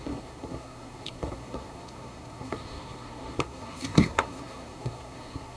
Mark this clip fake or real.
fake